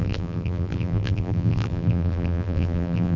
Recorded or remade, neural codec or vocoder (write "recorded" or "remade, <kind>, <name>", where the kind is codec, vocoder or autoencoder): remade, vocoder, BigVGAN v2